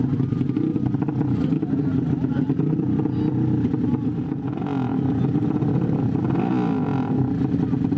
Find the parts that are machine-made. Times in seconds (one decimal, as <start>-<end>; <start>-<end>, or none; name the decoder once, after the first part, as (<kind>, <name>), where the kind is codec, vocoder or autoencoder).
none